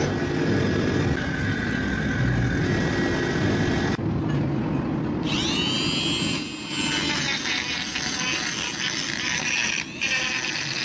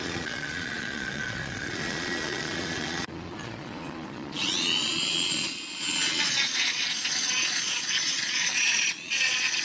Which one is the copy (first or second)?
second